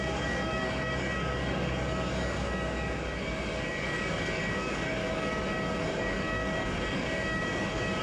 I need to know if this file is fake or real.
fake